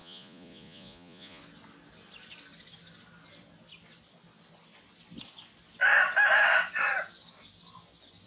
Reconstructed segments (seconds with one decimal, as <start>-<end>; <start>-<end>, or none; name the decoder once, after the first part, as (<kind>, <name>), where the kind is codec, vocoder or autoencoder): 0.0-1.4 (vocoder, Vocos)